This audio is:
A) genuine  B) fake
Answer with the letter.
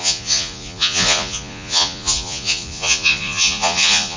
B